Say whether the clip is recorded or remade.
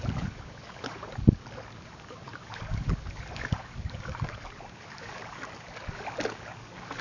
remade